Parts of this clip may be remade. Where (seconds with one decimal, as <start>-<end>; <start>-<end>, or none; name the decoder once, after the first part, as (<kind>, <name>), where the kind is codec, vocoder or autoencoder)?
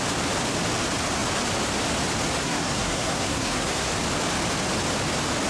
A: 2.4-3.9 (codec, SNAC)